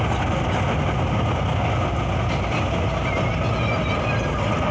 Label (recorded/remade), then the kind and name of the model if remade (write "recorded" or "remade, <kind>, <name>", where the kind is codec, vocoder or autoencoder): recorded